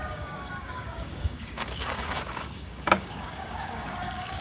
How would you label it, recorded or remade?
remade